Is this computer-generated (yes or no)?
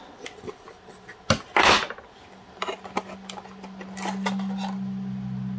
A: no